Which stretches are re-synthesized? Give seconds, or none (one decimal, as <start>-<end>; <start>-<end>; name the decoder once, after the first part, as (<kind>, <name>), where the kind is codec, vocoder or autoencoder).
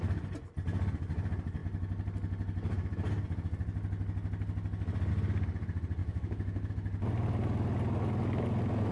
6.0-6.7 (autoencoder, DAC-VAE)